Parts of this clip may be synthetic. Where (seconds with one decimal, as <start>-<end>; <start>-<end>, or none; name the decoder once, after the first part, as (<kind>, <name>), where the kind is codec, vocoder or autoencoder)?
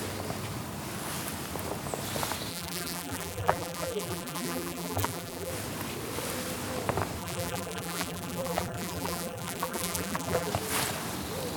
2.5-5.5 (vocoder, BigVGAN v2); 7.2-10.5